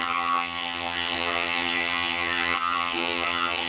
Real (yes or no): no